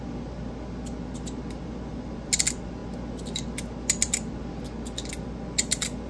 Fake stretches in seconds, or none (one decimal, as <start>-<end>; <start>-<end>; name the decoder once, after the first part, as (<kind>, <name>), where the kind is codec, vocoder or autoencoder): none